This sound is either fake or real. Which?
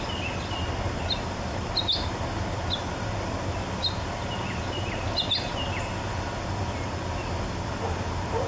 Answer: real